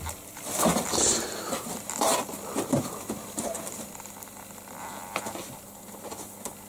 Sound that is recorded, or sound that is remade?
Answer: recorded